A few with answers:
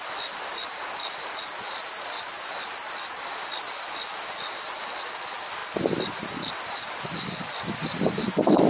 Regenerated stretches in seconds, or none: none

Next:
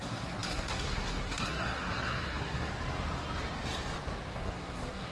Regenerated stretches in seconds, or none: 0.0-2.7 (codec, SNAC); 4.3-5.1

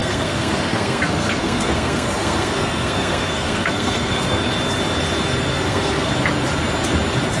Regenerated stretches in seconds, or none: 0.0-4.4 (codec, SNAC); 5.5-6.1